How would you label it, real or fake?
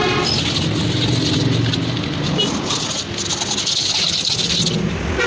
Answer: real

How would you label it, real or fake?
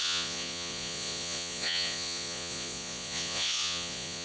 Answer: fake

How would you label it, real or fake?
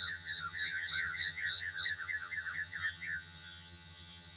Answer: fake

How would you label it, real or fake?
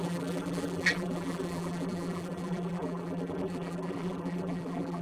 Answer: fake